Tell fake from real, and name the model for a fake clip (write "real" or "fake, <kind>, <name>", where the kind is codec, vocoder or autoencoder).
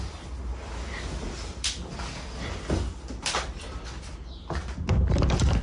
real